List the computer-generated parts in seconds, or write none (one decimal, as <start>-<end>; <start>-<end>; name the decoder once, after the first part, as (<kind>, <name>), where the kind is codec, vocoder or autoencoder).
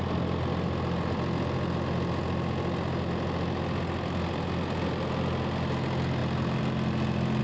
none